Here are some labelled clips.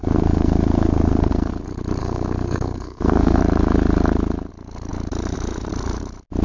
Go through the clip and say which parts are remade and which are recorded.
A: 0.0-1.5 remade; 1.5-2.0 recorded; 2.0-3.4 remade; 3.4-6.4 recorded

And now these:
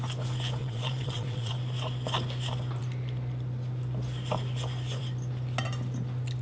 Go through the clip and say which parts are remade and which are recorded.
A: 0.0-0.6 recorded; 0.6-1.5 remade; 1.5-6.4 recorded

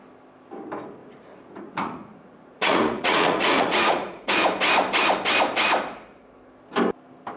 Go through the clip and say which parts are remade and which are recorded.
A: 0.0-1.0 recorded; 1.0-4.3 remade; 4.3-7.4 recorded

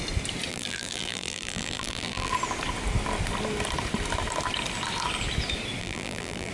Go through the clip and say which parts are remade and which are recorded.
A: 0.0-0.5 recorded; 0.5-2.3 remade; 2.3-5.8 recorded; 5.8-6.5 remade

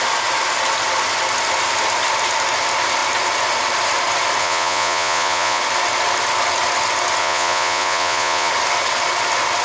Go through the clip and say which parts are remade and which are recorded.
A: 0.0-4.4 recorded; 4.4-5.6 remade; 5.6-7.2 recorded; 7.2-8.5 remade; 8.5-9.6 recorded

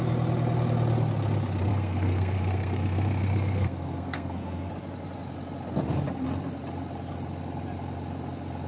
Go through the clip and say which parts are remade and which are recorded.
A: 0.0-1.7 recorded; 1.7-4.7 remade; 4.7-8.7 recorded

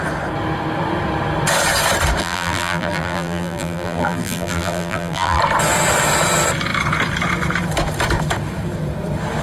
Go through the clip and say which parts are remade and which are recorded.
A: 0.0-2.2 recorded; 2.2-5.4 remade; 5.4-9.4 recorded